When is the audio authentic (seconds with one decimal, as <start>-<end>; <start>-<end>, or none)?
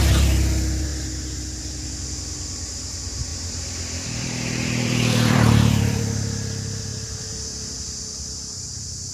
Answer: 0.0-3.3; 6.0-6.9; 8.0-9.1